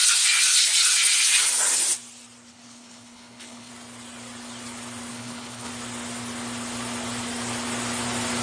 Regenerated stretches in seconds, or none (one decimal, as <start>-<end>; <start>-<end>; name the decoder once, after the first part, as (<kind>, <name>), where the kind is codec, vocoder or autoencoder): 2.5-3.7 (codec, HILCodec); 5.1-5.7